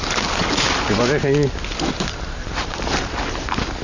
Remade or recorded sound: recorded